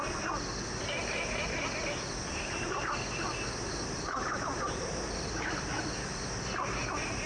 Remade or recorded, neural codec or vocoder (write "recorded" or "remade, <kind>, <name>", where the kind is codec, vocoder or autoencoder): recorded